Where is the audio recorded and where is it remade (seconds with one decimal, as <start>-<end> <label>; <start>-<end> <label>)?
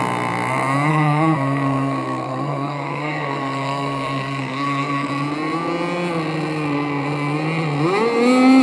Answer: 0.0-0.9 recorded; 0.9-5.1 remade; 5.1-8.6 recorded